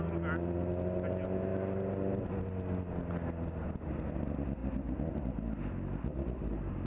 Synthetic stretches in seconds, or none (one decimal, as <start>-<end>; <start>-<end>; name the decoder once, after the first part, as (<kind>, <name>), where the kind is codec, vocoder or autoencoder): none